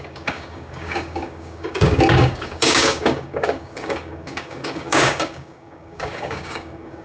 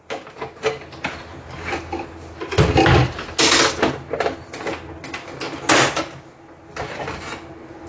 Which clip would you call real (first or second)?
second